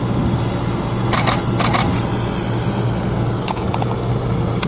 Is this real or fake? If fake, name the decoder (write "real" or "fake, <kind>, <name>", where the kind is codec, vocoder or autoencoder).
real